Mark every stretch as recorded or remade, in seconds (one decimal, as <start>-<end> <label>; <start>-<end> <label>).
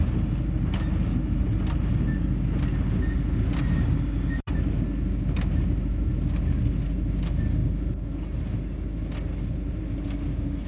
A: 0.0-10.7 recorded